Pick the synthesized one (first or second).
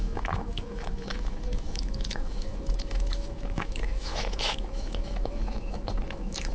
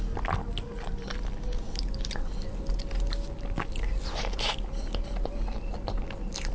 first